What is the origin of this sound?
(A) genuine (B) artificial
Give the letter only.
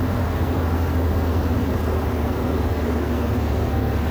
B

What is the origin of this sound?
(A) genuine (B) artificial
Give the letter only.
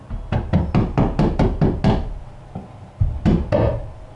A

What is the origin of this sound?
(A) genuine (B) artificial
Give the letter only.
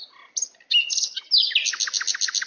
A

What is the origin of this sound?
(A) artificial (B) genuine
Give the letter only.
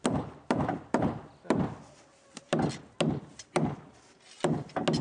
B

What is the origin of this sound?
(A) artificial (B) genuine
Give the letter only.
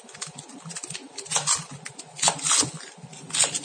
B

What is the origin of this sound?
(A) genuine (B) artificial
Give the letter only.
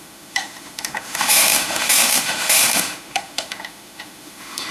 B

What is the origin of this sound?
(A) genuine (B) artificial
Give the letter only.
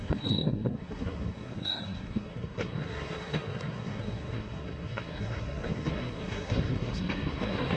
B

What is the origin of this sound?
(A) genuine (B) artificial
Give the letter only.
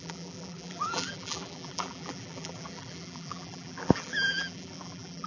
B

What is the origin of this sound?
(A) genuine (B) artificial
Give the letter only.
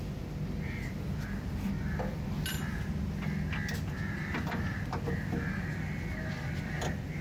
A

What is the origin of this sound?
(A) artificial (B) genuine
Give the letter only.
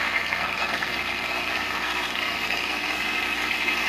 A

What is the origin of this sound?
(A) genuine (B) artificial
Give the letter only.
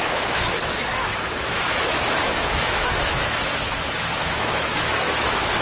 B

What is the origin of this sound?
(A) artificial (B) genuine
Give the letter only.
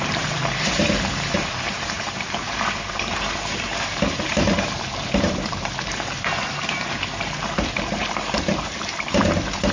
A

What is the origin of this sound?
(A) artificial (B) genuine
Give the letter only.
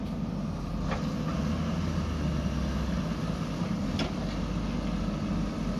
B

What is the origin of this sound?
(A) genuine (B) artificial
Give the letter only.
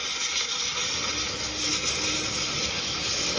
A